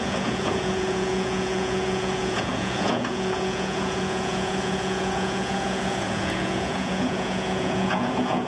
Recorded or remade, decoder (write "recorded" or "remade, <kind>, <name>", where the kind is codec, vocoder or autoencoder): remade, vocoder, Vocos